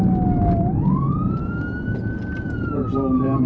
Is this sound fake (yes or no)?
no